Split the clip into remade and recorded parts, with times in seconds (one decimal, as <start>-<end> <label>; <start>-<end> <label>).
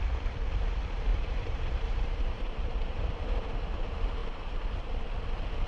0.0-1.1 recorded; 1.1-3.1 remade; 3.1-4.2 recorded; 4.2-5.1 remade; 5.1-5.7 recorded